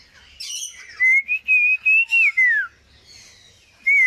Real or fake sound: real